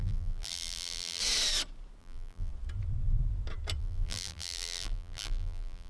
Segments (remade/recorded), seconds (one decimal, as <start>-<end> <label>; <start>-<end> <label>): 0.0-1.2 remade; 1.2-2.0 recorded; 2.0-2.5 remade; 2.5-3.8 recorded; 3.8-5.9 remade

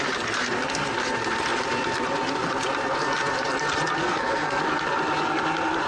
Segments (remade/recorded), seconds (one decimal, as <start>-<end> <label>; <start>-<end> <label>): 0.0-4.0 recorded; 4.0-4.6 remade; 4.6-5.9 recorded

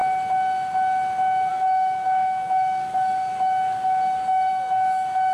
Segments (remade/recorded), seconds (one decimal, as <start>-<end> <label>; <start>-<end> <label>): 0.0-1.5 recorded; 1.5-5.3 remade

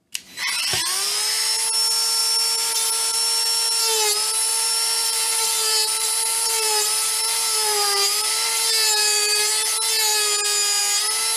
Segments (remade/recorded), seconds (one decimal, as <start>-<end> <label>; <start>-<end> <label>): 0.0-4.5 recorded; 4.5-9.5 remade; 9.5-11.4 recorded

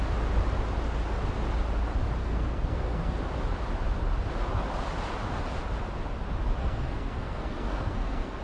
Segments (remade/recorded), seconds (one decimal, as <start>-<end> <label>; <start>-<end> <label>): 0.0-2.2 recorded; 2.2-3.2 remade; 3.2-6.6 recorded; 6.6-8.4 remade

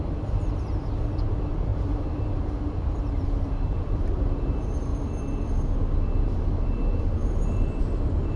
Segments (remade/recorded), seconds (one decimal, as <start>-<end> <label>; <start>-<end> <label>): 0.0-4.9 remade; 4.9-6.2 recorded; 6.2-8.4 remade